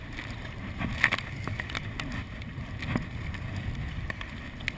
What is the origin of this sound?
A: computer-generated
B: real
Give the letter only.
B